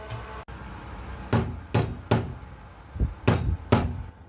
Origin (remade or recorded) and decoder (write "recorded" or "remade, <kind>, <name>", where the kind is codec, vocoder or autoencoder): recorded